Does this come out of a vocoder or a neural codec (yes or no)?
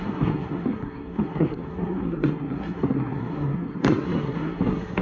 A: yes